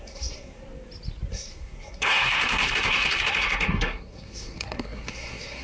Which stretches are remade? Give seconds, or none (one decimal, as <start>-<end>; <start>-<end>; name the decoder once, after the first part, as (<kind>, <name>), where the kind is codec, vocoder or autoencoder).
0.0-0.6 (codec, SNAC); 1.3-5.6

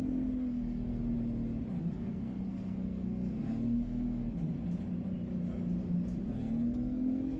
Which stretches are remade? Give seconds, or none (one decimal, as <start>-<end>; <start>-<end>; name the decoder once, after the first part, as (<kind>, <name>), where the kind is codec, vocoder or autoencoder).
0.0-0.9 (codec, SNAC); 1.8-4.2; 6.3-7.4